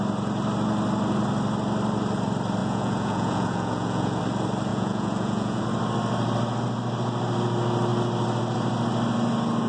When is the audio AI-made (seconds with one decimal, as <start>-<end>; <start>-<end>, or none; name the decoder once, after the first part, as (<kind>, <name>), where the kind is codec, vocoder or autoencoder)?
2.6-4.2 (vocoder, Vocos); 4.7-5.6